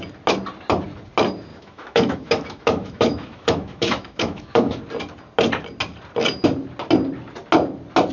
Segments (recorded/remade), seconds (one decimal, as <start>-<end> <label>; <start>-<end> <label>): 0.0-1.5 recorded; 1.5-4.8 remade; 4.8-8.1 recorded